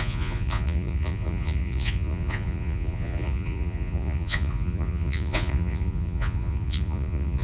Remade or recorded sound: remade